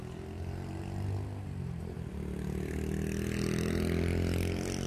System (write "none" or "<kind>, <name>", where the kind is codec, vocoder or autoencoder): none